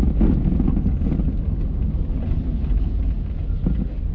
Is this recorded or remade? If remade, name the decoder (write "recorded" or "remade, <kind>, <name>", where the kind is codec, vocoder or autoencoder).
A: recorded